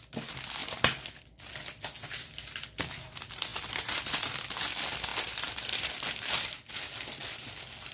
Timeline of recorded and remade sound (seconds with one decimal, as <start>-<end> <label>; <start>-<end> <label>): 0.0-3.5 recorded; 3.5-4.5 remade; 4.5-5.1 recorded; 5.1-5.8 remade; 5.8-7.9 recorded